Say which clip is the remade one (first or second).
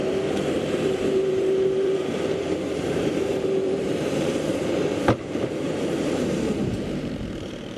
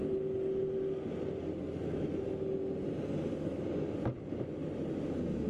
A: first